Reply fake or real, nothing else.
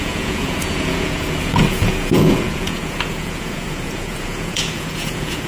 fake